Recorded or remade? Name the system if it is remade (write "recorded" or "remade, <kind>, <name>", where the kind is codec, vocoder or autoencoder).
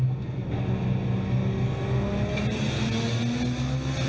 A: recorded